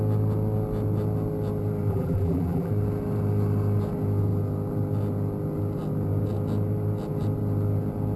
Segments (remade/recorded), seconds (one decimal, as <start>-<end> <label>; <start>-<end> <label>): 0.0-1.9 recorded; 1.9-2.7 remade; 2.7-8.2 recorded